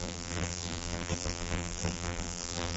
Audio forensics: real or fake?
fake